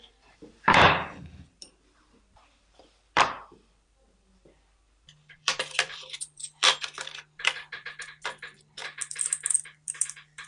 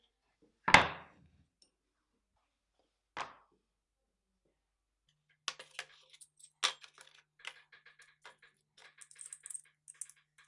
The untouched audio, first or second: second